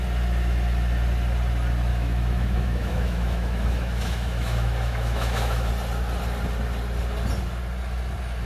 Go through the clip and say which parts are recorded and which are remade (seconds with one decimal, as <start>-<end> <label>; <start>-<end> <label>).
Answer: 0.0-1.9 recorded; 1.9-5.7 remade; 5.7-8.5 recorded